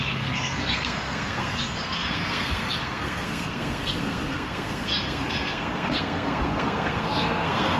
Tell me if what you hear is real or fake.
fake